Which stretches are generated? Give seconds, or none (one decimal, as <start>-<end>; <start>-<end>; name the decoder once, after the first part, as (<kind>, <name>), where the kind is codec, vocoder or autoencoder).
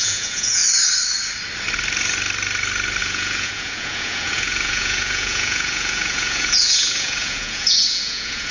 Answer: 0.0-0.6 (vocoder, Vocos); 3.0-8.5